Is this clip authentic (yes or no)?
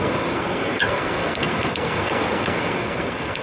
no